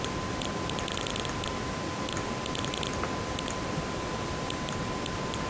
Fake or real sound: real